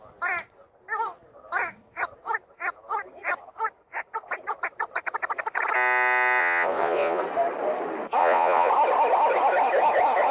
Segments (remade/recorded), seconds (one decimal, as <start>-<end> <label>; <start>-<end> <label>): 0.0-6.4 recorded; 6.4-7.2 remade; 7.2-8.2 recorded; 8.2-8.7 remade; 8.7-10.3 recorded